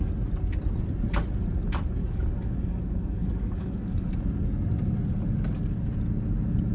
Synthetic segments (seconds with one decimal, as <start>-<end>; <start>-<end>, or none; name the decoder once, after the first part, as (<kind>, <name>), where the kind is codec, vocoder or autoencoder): 2.0-4.1 (codec, DAC)